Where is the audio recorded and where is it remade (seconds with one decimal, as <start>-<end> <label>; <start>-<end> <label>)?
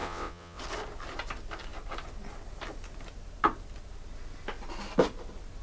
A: 0.0-0.6 remade; 0.6-5.6 recorded